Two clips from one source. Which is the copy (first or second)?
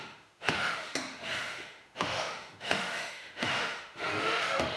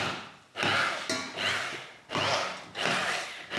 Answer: first